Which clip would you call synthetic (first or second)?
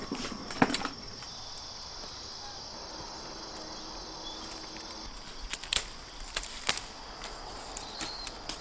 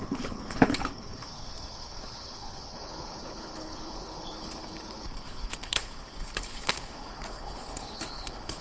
second